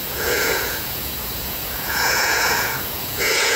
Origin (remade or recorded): remade